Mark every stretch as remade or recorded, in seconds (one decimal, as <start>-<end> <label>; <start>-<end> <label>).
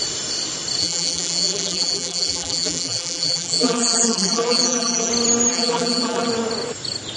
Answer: 0.0-0.8 recorded; 0.8-5.1 remade; 5.1-5.5 recorded; 5.5-6.3 remade; 6.3-7.2 recorded